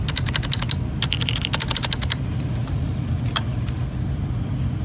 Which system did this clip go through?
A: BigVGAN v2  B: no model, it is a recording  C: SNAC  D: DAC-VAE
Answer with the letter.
B